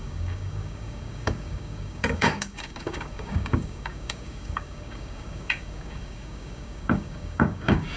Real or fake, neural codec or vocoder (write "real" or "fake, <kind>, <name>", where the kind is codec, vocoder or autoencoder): fake, codec, DAC